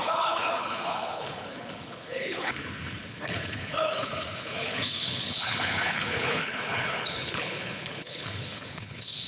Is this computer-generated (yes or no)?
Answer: yes